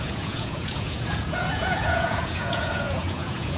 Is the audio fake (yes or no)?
yes